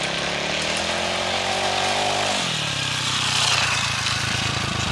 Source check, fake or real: real